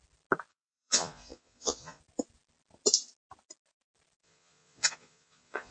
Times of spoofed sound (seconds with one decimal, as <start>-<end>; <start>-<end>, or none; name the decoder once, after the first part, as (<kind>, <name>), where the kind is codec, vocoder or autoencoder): 0.5-2.0 (vocoder, Vocos); 4.2-5.7